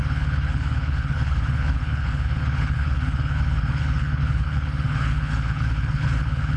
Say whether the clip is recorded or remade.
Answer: remade